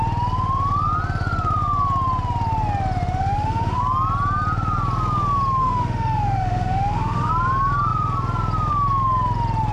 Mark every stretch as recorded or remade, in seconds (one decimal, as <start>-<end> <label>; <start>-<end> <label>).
0.0-3.2 recorded; 3.2-3.8 remade; 3.8-5.6 recorded; 5.6-7.3 remade; 7.3-9.7 recorded